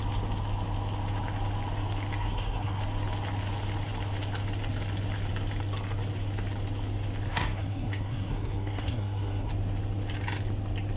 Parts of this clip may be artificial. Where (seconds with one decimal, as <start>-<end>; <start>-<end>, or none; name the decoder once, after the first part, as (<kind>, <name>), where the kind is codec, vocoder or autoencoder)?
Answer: 2.2-2.8 (codec, SNAC); 7.3-9.5